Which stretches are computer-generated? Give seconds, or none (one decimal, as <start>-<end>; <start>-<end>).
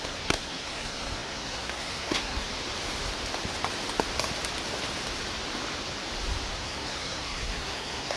0.0-2.5; 6.5-8.2